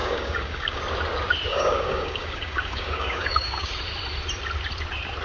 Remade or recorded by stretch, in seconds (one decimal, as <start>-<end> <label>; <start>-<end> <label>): 0.0-0.8 remade; 0.8-1.5 recorded; 1.5-3.7 remade; 3.7-5.2 recorded

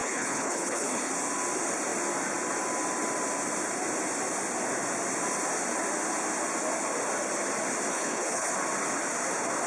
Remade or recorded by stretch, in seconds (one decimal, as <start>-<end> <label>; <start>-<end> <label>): 0.0-1.1 remade; 1.1-7.9 recorded; 7.9-8.5 remade; 8.5-9.7 recorded